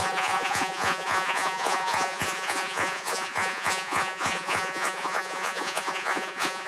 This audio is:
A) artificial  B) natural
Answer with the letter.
A